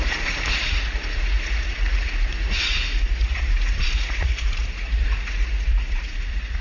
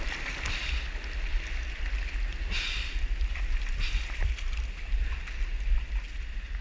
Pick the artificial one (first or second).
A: first